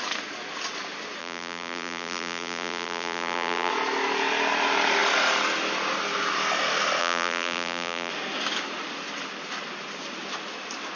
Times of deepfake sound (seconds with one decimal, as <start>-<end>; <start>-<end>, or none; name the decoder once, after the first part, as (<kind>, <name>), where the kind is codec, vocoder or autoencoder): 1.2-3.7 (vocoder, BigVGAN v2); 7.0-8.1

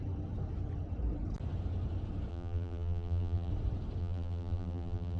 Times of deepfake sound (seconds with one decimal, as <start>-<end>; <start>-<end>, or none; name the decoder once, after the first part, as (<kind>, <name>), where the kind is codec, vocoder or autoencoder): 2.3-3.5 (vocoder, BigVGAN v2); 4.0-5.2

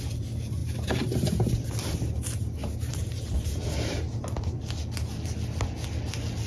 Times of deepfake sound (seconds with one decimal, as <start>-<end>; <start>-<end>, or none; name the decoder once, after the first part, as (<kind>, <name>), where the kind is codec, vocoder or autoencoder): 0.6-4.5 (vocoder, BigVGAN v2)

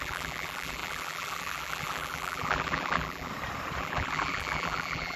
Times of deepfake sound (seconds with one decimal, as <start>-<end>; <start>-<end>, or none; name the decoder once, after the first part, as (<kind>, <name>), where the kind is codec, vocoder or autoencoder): 0.0-3.3 (vocoder, BigVGAN v2); 3.8-5.2